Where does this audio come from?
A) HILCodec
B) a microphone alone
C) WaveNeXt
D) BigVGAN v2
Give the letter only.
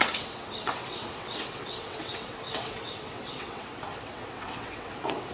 C